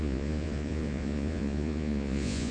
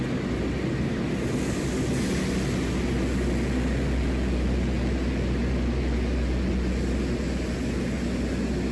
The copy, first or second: first